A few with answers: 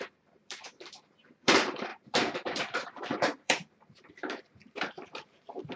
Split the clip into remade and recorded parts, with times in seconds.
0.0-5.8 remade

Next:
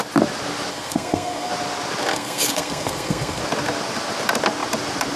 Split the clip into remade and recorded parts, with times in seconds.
0.0-0.7 recorded; 0.7-1.5 remade; 1.5-2.1 recorded; 2.1-3.4 remade; 3.4-5.2 recorded

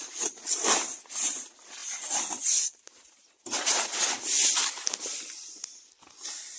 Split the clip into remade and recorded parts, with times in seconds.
0.0-6.6 recorded